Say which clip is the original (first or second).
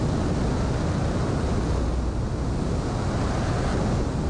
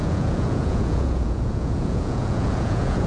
first